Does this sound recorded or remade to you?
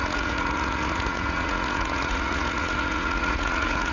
remade